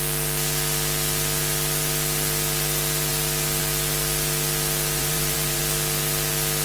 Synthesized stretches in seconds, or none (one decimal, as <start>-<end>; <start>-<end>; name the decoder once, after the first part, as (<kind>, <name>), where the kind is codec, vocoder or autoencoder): 5.0-5.6 (vocoder, BigVGAN v2)